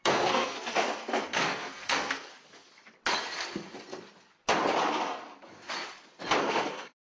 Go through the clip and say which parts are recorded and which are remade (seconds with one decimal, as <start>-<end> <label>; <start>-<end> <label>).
0.0-2.3 remade; 2.3-6.4 recorded; 6.4-7.2 remade